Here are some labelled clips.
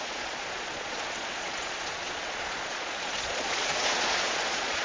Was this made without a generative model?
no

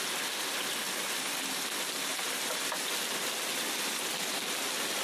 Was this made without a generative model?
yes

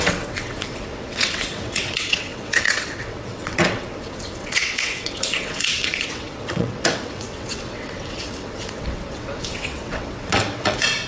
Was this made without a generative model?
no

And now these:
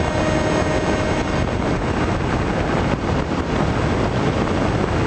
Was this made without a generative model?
yes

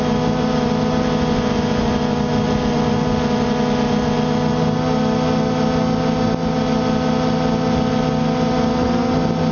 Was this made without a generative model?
yes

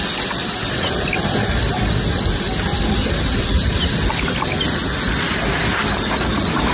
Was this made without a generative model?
yes